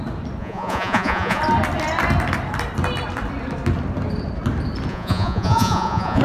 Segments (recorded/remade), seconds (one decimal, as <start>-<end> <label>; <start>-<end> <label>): 0.0-0.4 recorded; 0.4-1.4 remade; 1.4-4.9 recorded; 4.9-6.2 remade